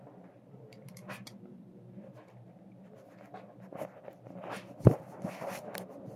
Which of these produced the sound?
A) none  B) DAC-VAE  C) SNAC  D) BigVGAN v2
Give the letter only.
D